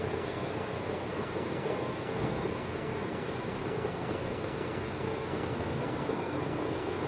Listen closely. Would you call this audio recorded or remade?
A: remade